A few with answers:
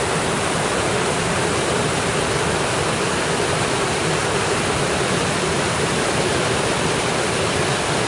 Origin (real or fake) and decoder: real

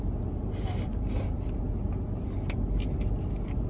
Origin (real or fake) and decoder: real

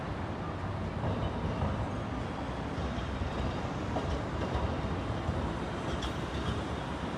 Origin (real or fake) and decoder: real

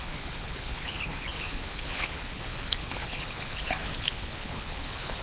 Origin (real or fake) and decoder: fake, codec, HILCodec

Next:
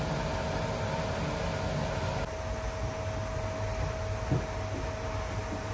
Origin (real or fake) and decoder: real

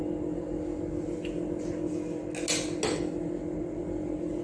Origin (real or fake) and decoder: real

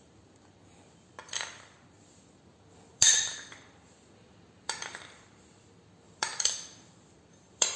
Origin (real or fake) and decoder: fake, vocoder, BigVGAN v2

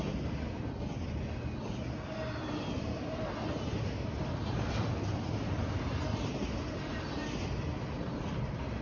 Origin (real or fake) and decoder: real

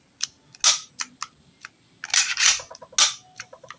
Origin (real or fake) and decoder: real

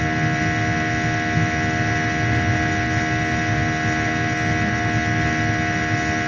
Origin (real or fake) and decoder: real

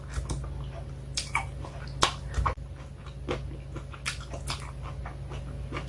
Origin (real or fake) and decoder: real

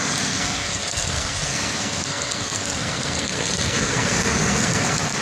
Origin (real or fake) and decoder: fake, codec, SNAC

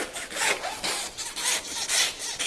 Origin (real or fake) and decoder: real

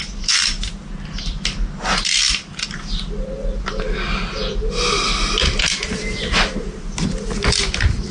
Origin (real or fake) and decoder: real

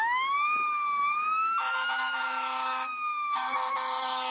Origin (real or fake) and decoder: fake, autoencoder, DAC-VAE